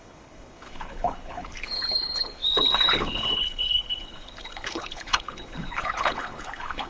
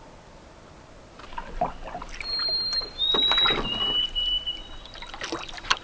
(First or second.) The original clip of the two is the second